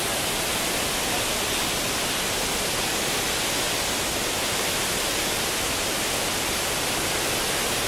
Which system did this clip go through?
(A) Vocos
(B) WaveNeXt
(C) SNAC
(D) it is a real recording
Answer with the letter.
D